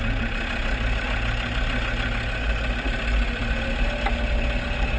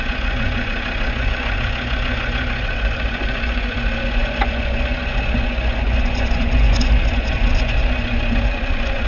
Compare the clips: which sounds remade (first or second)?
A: second